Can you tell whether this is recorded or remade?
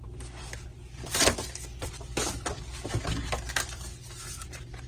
recorded